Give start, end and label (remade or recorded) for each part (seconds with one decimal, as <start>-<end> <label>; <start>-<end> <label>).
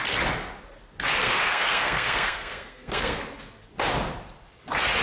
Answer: 0.0-1.2 recorded; 1.2-3.2 remade; 3.2-5.0 recorded